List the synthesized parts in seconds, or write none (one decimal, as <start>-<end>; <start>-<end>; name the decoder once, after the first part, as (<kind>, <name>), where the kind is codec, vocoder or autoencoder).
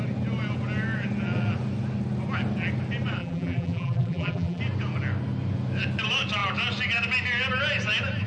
3.2-4.6 (vocoder, BigVGAN v2)